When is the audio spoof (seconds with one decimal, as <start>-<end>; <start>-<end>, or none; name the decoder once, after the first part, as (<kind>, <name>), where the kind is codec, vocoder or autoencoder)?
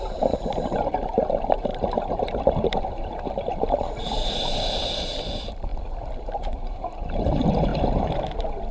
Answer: 0.0-5.7 (vocoder, BigVGAN v2); 6.3-7.7